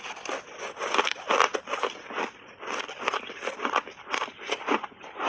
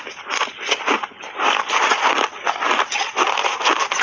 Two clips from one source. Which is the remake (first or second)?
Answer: first